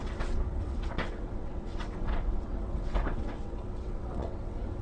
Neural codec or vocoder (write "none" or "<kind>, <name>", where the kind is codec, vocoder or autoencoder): vocoder, WaveNeXt